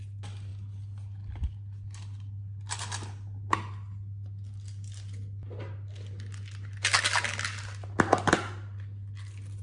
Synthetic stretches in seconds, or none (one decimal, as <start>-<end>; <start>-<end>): none